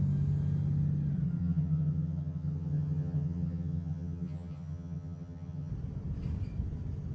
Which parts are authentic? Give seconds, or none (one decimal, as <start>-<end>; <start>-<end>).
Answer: 0.0-1.4; 5.7-7.1